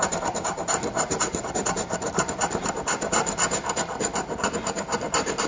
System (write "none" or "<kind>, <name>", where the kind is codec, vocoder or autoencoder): vocoder, BigVGAN v2